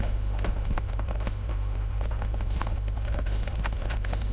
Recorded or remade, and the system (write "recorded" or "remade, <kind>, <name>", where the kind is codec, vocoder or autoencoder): remade, autoencoder, DAC-VAE